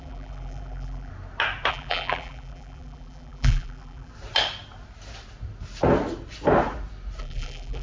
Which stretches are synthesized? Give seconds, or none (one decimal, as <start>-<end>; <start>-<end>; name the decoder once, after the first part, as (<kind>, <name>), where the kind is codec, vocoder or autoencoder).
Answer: 0.0-1.1 (vocoder, BigVGAN v2); 1.7-4.1; 7.2-7.8